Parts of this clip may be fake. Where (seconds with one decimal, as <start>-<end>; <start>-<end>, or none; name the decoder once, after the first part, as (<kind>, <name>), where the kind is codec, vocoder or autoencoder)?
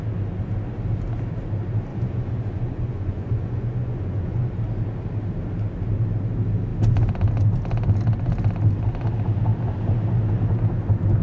1.9-4.5 (vocoder, Vocos)